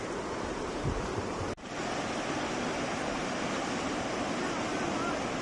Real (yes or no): yes